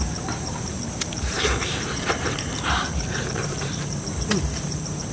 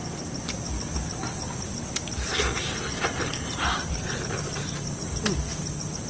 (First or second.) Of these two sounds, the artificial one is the first